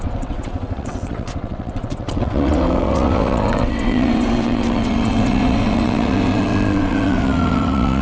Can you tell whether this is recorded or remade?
remade